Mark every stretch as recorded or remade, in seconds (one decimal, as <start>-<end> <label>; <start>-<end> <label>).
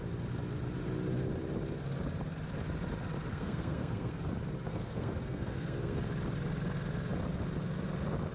0.0-3.3 recorded; 3.3-4.3 remade; 4.3-4.7 recorded; 4.7-6.0 remade; 6.0-8.3 recorded